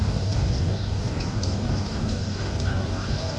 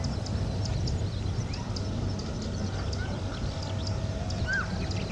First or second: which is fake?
first